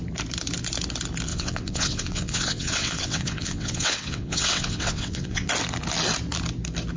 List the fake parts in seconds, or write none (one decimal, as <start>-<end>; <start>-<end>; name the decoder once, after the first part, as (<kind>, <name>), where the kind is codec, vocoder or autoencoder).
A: 1.3-5.5 (vocoder, WaveNeXt)